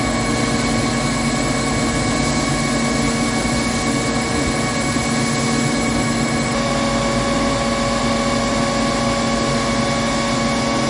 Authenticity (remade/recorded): recorded